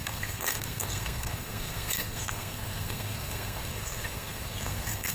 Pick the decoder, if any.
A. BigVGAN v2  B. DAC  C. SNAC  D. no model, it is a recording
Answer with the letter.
C